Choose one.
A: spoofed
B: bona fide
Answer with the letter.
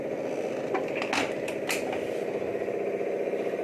B